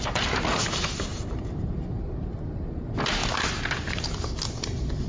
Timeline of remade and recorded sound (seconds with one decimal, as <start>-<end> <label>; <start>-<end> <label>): 0.0-1.1 recorded; 1.1-1.7 remade; 1.7-5.1 recorded